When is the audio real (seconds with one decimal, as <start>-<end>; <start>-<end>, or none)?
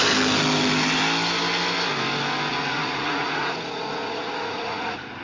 0.0-2.5